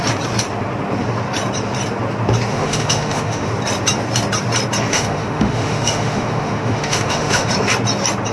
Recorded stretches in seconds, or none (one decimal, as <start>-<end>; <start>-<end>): 0.0-2.5; 3.5-4.9; 7.5-8.3